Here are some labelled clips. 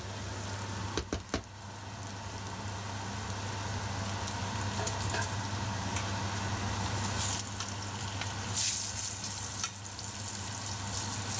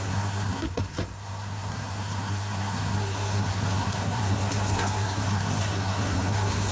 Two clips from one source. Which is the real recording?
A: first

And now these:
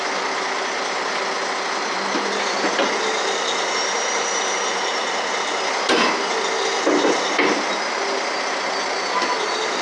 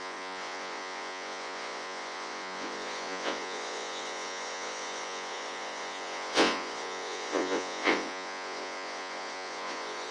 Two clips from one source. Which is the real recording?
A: first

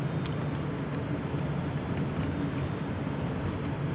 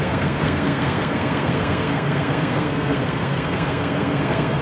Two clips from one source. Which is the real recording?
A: first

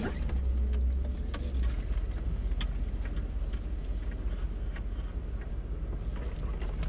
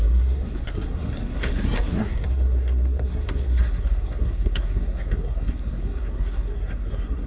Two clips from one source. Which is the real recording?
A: first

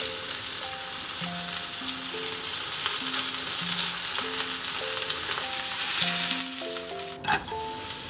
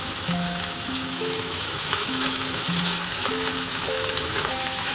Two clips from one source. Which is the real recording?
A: first